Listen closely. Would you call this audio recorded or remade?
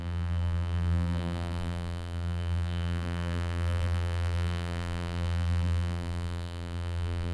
remade